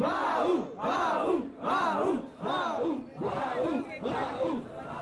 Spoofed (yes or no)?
no